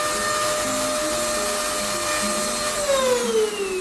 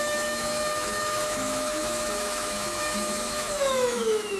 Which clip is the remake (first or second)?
second